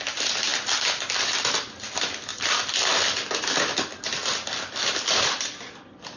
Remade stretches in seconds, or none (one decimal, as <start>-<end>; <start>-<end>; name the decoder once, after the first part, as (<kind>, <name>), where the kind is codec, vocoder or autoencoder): none